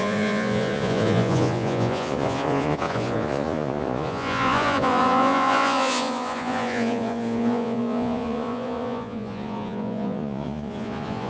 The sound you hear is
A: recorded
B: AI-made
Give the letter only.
B